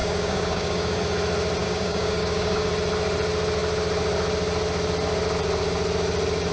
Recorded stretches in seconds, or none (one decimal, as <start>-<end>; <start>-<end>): 1.0-1.6; 2.7-6.5